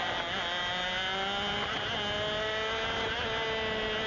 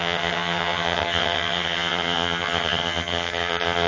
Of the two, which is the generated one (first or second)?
second